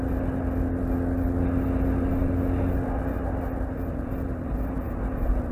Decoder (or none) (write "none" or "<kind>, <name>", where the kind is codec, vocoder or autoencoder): none